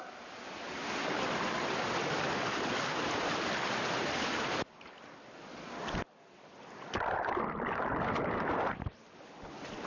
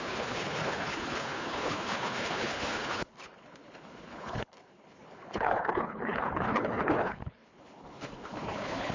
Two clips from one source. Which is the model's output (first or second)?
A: second